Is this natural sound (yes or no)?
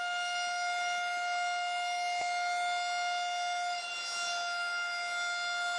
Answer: yes